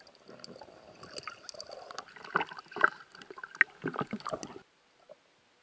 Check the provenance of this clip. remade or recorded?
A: recorded